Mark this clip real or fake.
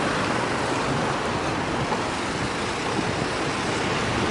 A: real